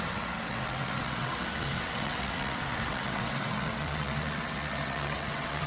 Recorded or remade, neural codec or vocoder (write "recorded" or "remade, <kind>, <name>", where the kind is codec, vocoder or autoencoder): remade, vocoder, WaveNeXt